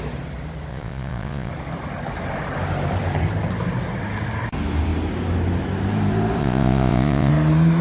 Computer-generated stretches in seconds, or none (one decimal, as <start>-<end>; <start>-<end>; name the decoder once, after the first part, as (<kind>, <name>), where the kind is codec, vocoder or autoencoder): 0.7-1.5 (vocoder, Vocos); 6.4-7.3